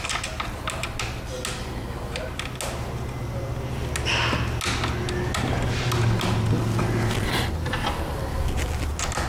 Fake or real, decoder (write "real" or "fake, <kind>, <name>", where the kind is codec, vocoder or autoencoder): real